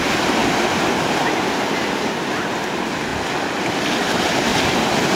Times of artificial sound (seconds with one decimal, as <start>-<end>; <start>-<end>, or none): 0.0-0.4; 1.7-3.1; 3.7-4.5